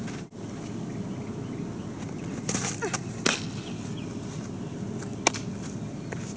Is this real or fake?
real